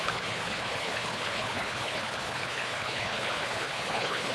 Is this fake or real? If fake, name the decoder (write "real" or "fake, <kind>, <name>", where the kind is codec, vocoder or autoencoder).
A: fake, codec, HILCodec